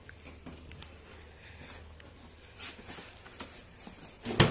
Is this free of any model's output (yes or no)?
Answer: yes